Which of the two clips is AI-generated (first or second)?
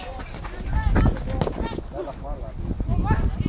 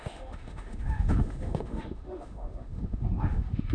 second